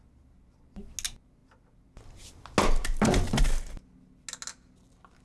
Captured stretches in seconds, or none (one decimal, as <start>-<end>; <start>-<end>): 0.0-5.2